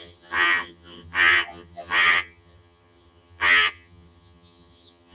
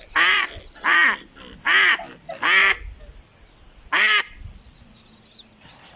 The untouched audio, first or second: second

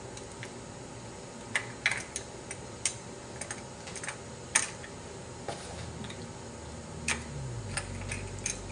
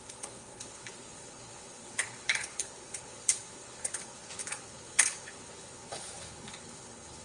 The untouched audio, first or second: first